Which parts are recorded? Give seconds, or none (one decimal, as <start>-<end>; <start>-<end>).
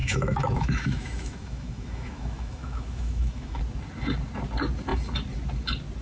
3.6-6.0